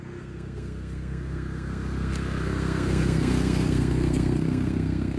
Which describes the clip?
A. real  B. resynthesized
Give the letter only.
B